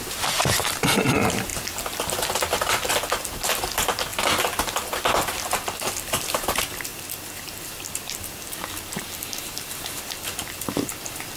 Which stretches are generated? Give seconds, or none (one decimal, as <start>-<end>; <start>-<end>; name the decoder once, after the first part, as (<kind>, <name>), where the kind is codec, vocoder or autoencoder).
none